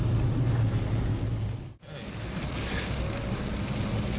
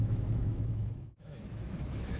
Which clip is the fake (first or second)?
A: second